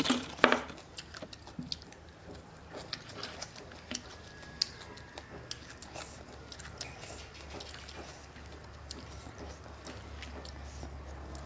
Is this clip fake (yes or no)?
no